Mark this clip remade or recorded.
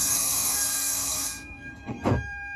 remade